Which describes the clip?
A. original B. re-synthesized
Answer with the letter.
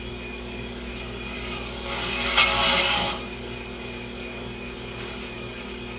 B